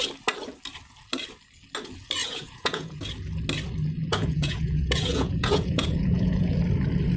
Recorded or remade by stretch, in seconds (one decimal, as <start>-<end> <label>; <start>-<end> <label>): 0.0-2.2 recorded; 2.2-3.0 remade; 3.0-4.0 recorded; 4.0-6.6 remade; 6.6-7.2 recorded